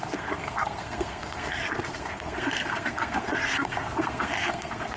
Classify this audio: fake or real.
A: fake